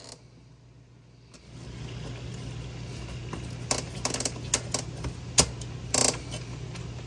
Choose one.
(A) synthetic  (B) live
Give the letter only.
B